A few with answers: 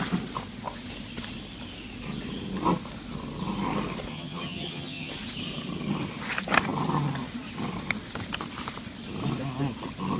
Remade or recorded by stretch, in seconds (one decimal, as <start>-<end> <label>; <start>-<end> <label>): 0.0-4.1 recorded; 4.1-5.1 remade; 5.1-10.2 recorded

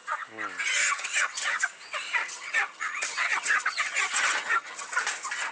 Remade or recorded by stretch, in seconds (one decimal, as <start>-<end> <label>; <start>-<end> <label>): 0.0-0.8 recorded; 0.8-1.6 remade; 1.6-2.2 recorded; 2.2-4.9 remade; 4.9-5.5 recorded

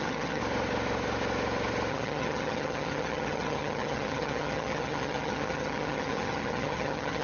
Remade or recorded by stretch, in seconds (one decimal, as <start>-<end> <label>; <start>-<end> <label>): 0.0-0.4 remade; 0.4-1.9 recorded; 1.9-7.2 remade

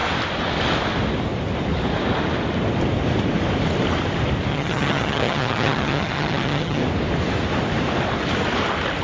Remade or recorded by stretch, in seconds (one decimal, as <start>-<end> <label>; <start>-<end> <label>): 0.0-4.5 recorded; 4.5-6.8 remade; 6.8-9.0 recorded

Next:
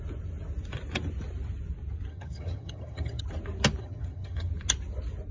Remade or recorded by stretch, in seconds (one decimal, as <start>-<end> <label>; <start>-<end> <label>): 0.0-2.1 recorded; 2.1-3.2 remade; 3.2-3.8 recorded; 3.8-4.5 remade; 4.5-5.3 recorded

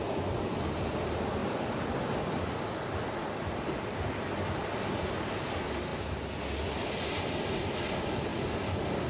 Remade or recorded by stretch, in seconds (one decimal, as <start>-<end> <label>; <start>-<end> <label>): 0.0-9.1 recorded